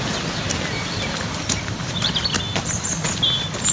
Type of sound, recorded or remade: remade